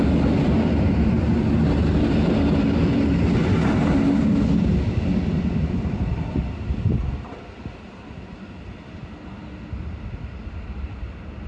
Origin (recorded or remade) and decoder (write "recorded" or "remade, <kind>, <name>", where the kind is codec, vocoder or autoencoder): recorded